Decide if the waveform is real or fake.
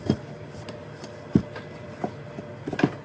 real